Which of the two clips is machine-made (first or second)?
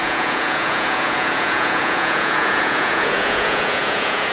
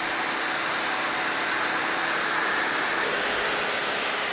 first